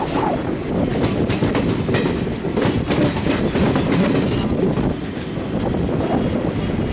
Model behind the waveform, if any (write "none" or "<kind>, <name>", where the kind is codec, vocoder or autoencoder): none